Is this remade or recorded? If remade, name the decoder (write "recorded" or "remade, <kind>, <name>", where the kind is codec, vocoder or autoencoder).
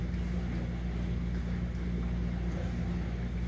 recorded